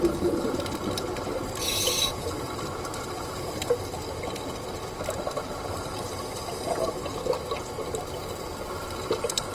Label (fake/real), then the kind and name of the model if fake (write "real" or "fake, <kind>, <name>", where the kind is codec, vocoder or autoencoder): real